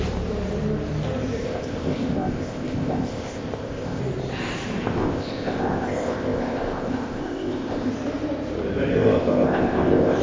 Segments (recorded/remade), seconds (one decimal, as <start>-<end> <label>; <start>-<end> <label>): 0.0-1.4 recorded; 1.4-4.0 remade; 4.0-4.8 recorded; 4.8-7.9 remade; 7.9-8.9 recorded; 8.9-10.2 remade